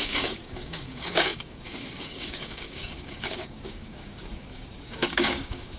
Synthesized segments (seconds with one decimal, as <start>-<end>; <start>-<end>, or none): 0.0-5.8